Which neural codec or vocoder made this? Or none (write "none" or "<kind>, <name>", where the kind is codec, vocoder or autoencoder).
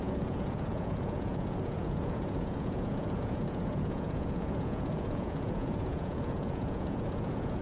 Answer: vocoder, Vocos